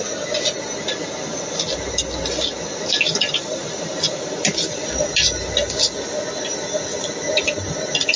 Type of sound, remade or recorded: recorded